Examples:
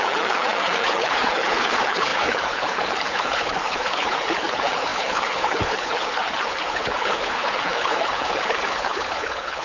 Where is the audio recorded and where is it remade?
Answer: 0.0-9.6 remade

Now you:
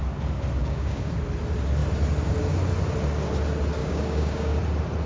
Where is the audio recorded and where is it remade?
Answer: 0.0-0.6 recorded; 0.6-1.1 remade; 1.1-3.8 recorded; 3.8-4.6 remade; 4.6-5.1 recorded

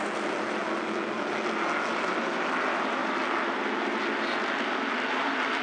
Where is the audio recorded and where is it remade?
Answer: 0.0-5.6 recorded

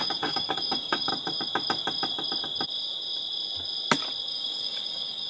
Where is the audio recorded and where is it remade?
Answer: 0.0-1.1 remade; 1.1-4.3 recorded; 4.3-5.3 remade

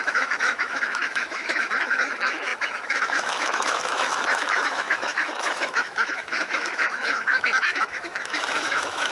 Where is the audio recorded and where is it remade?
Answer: 0.0-9.1 remade